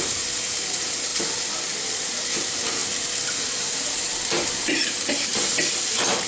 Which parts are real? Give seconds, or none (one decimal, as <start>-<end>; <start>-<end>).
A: 1.1-2.1; 2.8-3.4; 5.3-6.3